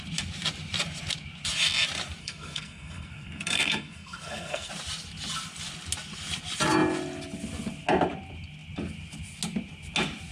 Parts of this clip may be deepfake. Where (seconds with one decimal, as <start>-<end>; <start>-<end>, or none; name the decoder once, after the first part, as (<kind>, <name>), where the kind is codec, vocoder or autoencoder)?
2.2-4.7 (codec, SNAC)